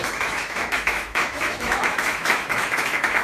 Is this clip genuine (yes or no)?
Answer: no